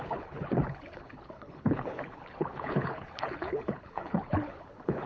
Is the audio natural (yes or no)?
no